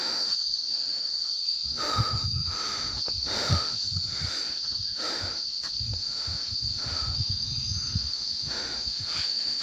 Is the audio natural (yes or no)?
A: no